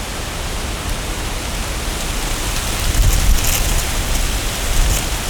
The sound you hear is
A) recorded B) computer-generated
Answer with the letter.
A